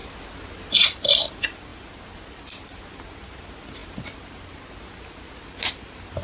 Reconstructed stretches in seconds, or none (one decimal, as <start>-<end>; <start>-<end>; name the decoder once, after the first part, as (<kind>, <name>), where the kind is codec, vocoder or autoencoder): none